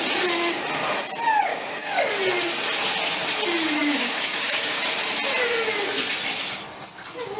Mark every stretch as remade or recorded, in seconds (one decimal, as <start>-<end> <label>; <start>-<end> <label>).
0.0-1.5 recorded; 1.5-2.0 remade; 2.0-3.8 recorded; 3.8-4.8 remade; 4.8-7.4 recorded